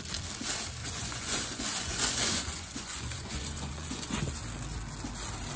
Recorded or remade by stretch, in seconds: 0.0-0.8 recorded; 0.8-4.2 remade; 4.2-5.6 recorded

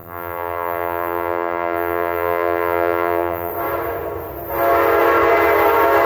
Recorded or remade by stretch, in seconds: 0.0-3.5 remade; 3.5-6.1 recorded

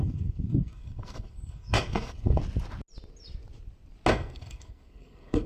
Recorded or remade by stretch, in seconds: 0.0-2.4 remade; 2.4-4.1 recorded; 4.1-5.5 remade

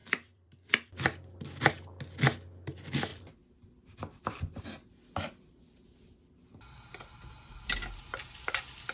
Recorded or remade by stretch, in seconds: 0.0-0.9 remade; 0.9-3.1 recorded; 3.1-4.6 remade; 4.6-8.9 recorded